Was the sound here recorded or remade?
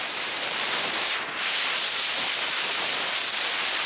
remade